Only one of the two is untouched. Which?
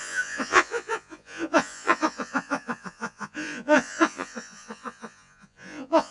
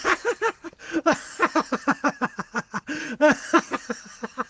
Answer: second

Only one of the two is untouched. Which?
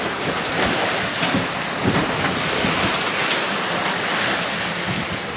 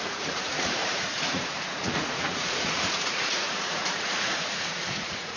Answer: first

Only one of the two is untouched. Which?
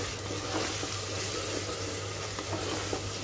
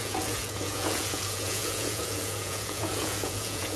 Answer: first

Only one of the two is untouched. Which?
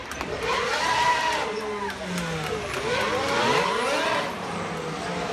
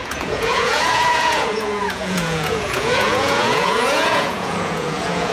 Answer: first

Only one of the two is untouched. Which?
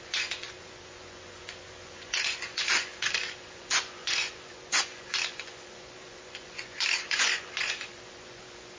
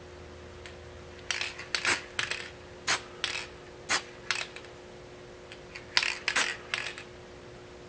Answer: second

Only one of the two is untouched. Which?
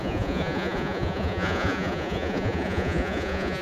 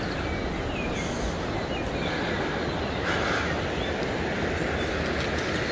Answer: second